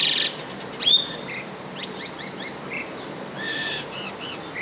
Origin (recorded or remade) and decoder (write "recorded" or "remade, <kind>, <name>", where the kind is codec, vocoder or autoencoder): recorded